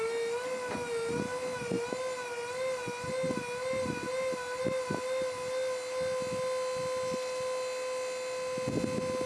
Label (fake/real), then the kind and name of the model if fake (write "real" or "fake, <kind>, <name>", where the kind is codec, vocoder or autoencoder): real